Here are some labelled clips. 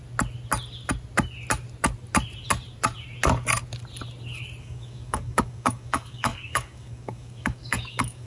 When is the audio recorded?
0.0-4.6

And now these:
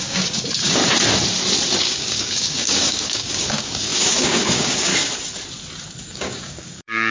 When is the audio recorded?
0.8-1.8; 4.9-6.1

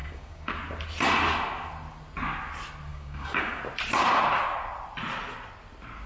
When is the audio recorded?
0.5-2.9; 3.6-6.1

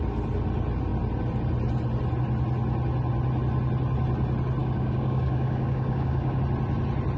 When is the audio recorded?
0.0-4.6; 6.4-7.2